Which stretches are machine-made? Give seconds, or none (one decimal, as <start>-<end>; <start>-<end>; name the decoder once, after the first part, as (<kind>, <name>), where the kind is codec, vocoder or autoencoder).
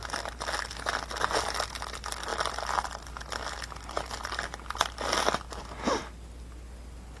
none